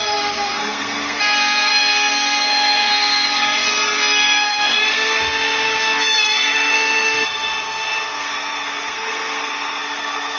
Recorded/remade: remade